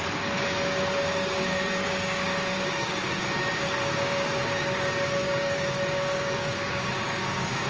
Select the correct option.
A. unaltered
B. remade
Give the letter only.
B